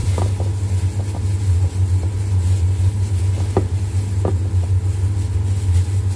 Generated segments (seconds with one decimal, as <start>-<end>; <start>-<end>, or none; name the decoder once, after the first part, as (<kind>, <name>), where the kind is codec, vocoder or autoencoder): none